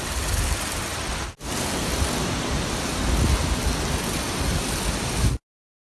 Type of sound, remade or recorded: recorded